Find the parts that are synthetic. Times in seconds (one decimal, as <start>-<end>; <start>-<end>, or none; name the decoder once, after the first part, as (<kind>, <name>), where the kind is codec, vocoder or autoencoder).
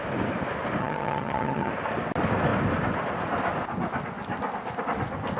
0.8-1.7 (vocoder, HiFi-GAN)